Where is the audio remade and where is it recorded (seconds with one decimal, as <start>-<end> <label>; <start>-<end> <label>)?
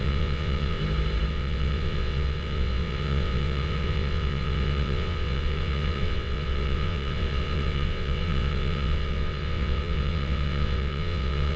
0.0-0.8 remade; 0.8-1.3 recorded; 1.3-11.6 remade